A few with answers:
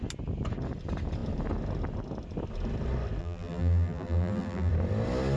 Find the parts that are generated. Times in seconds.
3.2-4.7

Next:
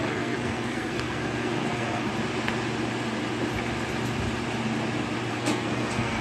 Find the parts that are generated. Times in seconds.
0.0-2.1; 5.3-6.2

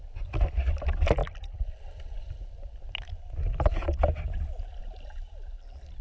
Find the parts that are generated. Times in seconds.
none

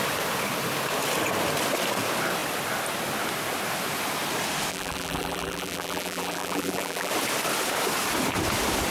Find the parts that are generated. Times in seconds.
4.7-7.1

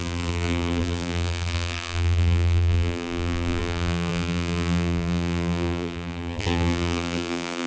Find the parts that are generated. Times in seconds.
0.0-7.7